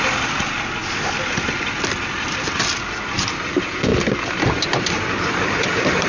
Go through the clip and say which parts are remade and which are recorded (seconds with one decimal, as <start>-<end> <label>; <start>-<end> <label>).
0.0-3.9 remade; 3.9-5.3 recorded; 5.3-6.1 remade